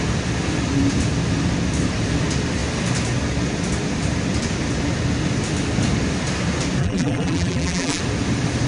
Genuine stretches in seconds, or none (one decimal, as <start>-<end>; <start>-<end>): 0.0-6.8; 8.0-8.7